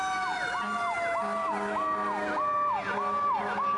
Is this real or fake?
real